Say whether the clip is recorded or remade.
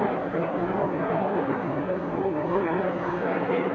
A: remade